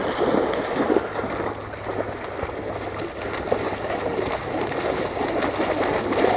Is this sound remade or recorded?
recorded